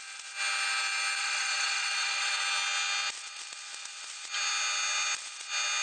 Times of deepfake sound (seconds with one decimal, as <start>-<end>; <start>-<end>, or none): 1.2-2.4